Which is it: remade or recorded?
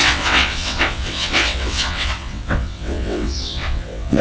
remade